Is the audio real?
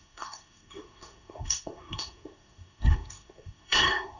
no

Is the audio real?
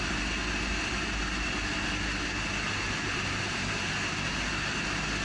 yes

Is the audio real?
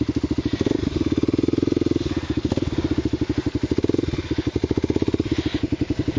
yes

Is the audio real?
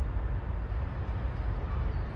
yes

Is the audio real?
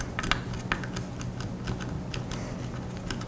yes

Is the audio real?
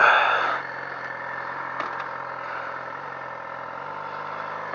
yes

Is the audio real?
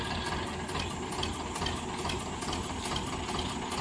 yes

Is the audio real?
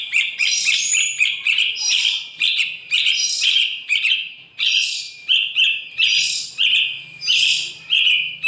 no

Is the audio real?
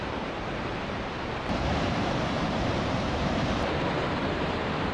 no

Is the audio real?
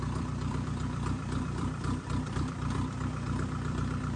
no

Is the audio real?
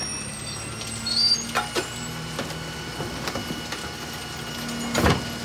yes